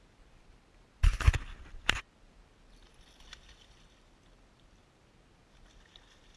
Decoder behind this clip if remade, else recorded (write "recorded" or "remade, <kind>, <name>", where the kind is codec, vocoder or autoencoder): recorded